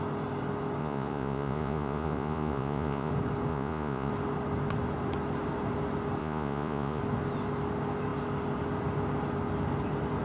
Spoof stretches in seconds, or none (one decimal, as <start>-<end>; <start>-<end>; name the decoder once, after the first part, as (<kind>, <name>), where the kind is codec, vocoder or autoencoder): 0.8-3.1 (vocoder, Vocos); 3.5-4.1; 6.2-7.0